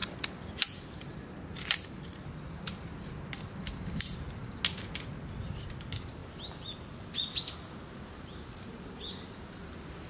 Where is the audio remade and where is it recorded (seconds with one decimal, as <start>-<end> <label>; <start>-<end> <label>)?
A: 0.0-10.1 recorded